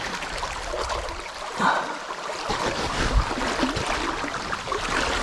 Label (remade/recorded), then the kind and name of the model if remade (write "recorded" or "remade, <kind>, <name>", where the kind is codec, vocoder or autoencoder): recorded